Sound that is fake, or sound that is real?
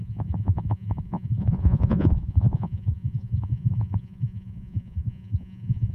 fake